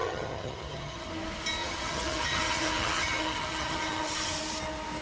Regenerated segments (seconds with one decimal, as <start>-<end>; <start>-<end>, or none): 0.0-1.1; 1.6-4.3